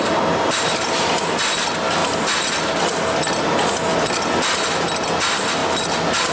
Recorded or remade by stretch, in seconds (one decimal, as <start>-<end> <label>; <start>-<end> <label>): 0.0-2.0 recorded; 2.0-3.3 remade; 3.3-3.9 recorded; 3.9-4.7 remade; 4.7-5.6 recorded; 5.6-6.3 remade